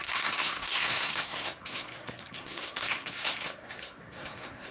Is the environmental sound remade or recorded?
remade